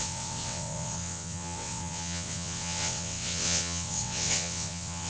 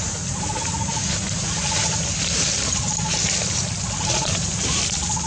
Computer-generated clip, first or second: first